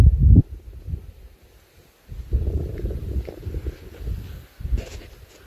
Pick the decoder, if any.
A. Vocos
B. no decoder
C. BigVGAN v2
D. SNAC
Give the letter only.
B